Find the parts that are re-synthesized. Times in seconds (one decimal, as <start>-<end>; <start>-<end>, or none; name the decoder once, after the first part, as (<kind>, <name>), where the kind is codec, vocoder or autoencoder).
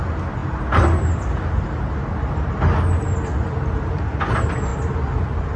none